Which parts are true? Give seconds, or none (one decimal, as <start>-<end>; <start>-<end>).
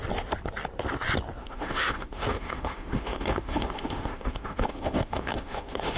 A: 0.0-1.4